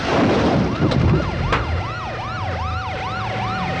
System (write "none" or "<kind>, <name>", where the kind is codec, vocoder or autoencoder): none